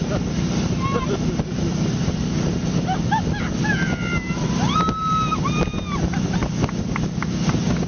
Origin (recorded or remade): recorded